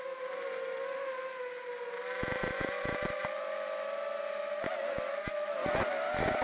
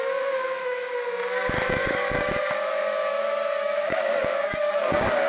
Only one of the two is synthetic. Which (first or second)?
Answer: second